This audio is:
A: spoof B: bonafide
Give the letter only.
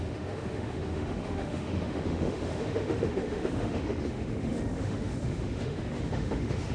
A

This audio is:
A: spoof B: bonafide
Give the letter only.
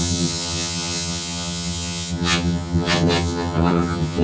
A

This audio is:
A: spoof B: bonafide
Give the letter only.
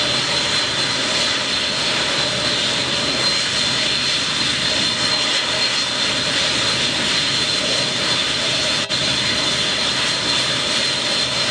B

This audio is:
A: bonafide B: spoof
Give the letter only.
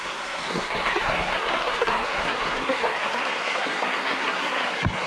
B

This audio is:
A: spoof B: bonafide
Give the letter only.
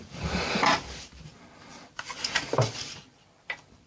A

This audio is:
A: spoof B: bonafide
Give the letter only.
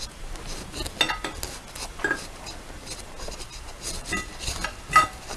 B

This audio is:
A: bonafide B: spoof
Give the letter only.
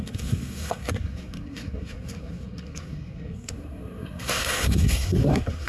B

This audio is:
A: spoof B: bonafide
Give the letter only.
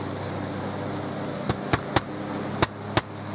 B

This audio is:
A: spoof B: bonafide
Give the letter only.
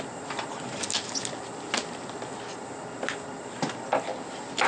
B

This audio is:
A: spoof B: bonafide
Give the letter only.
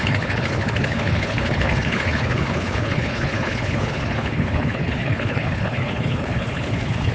A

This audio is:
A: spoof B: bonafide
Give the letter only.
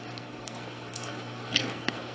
A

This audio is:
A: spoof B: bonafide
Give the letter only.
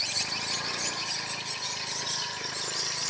B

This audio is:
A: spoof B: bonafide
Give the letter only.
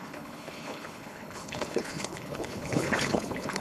A